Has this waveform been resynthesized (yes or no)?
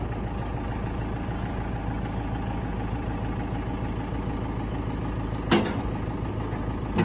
no